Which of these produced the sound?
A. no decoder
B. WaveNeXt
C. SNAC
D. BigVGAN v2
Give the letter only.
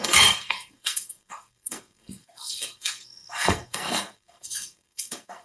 C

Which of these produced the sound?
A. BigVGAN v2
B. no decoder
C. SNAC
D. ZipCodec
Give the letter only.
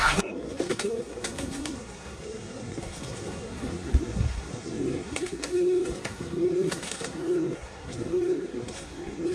C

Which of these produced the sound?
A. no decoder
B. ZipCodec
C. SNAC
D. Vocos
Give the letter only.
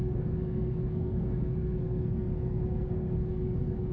C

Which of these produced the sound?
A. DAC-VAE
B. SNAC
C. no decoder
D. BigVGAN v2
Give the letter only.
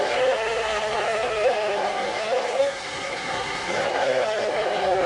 B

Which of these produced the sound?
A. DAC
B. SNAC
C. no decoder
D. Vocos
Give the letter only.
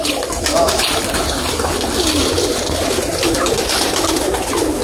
C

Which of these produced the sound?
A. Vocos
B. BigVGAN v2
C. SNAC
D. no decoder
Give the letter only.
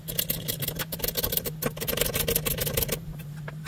D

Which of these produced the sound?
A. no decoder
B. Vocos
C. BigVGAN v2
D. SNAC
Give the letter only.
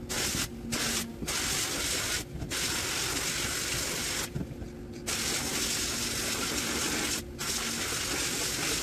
A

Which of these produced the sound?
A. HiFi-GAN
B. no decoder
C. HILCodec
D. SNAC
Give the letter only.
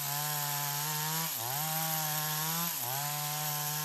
B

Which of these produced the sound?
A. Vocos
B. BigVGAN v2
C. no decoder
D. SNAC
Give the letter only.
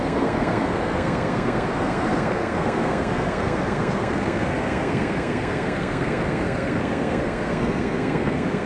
D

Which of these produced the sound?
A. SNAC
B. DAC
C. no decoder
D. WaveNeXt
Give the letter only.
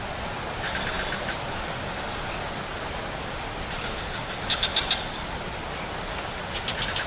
C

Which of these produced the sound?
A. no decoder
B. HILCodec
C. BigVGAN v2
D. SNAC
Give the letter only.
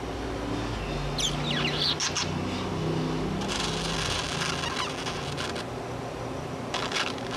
A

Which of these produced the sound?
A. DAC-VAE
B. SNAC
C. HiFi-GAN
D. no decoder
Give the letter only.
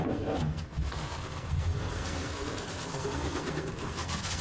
B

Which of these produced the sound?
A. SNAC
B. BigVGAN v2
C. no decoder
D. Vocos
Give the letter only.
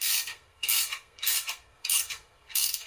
A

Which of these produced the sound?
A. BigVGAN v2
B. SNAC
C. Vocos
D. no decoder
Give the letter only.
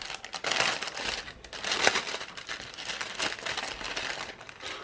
D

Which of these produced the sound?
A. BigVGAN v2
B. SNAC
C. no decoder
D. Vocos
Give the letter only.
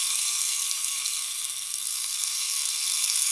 B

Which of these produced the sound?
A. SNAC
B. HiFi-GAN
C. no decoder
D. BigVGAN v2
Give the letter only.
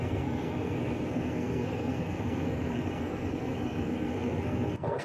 A